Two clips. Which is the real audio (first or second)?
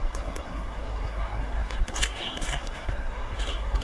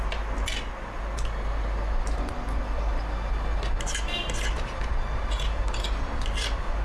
second